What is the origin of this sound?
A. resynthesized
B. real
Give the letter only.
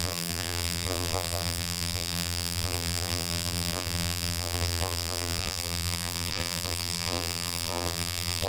A